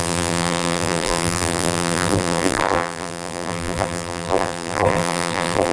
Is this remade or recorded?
remade